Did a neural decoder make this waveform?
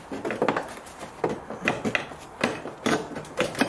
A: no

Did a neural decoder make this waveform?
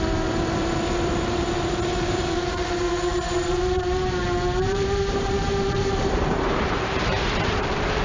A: yes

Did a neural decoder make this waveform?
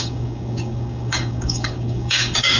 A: yes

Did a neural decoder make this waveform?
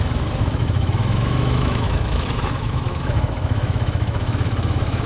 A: yes